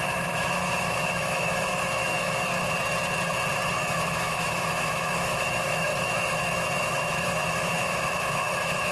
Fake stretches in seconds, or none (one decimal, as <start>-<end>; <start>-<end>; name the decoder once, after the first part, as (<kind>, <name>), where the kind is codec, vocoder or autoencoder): 0.0-2.5 (autoencoder, DAC-VAE); 3.7-8.9